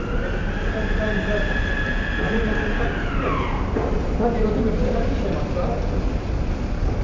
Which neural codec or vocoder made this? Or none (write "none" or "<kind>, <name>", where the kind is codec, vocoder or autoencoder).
none